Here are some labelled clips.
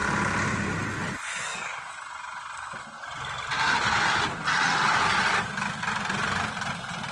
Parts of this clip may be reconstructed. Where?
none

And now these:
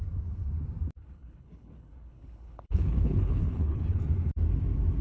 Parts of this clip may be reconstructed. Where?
1.0-4.0